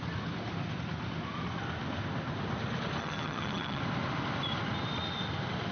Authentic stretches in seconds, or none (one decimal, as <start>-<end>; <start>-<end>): 0.0-3.0; 3.8-5.7